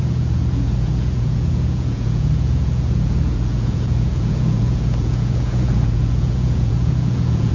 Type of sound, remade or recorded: remade